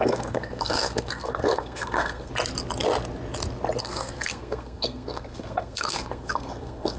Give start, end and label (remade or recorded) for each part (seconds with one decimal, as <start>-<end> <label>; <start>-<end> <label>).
0.0-2.3 remade; 2.3-3.8 recorded; 3.8-7.0 remade